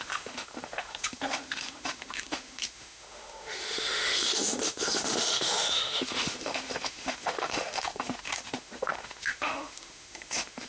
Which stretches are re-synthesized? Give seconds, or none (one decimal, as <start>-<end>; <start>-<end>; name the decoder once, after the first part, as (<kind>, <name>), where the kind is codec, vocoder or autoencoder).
0.0-10.7 (autoencoder, DAC-VAE)